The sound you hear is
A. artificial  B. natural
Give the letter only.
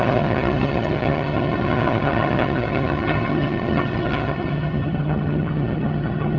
A